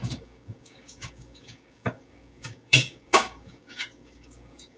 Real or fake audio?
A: fake